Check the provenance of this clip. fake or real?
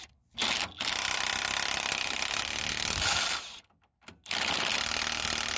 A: real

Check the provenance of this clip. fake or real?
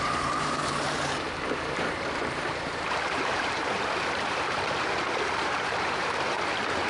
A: fake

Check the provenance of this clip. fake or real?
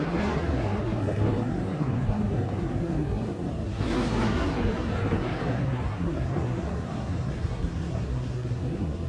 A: fake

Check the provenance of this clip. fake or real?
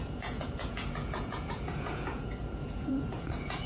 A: fake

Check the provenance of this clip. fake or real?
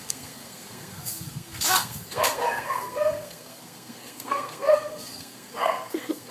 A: fake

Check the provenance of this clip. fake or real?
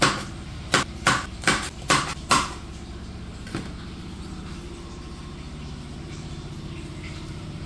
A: fake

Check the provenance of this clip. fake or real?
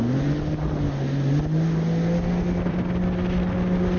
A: real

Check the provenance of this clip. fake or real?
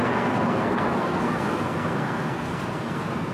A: fake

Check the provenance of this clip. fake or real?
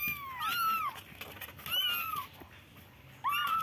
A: real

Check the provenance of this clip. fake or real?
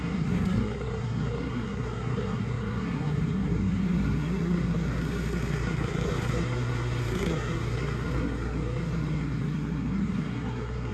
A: fake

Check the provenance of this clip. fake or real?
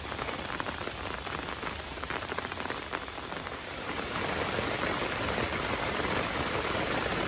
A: fake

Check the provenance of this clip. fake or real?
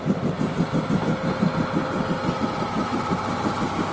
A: real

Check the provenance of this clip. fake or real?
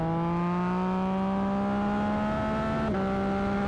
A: real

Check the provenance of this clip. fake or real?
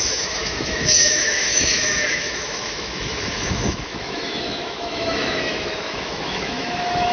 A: fake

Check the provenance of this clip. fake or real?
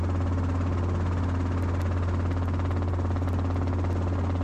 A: real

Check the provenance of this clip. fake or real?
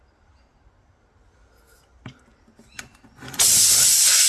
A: real